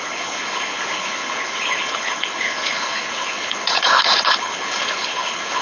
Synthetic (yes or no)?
yes